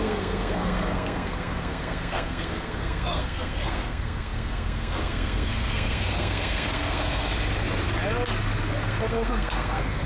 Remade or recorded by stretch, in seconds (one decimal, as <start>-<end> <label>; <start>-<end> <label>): 0.0-7.2 remade; 7.2-8.7 recorded; 8.7-10.1 remade